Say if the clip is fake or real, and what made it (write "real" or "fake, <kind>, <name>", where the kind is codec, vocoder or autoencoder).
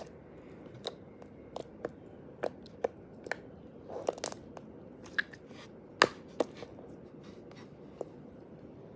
real